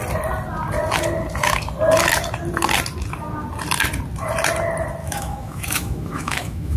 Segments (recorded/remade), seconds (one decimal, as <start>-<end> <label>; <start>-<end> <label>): 0.0-5.0 recorded; 5.0-6.8 remade